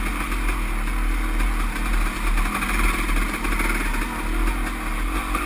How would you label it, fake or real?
real